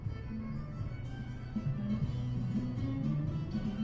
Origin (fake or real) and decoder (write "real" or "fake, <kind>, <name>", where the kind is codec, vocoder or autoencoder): real